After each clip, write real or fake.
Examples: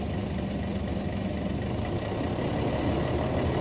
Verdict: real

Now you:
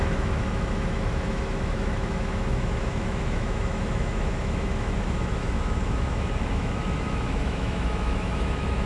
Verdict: fake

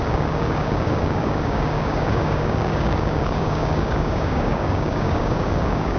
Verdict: fake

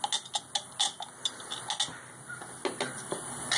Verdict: real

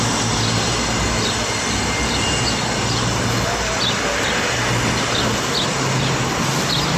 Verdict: real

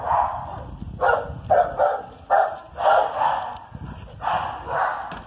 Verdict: real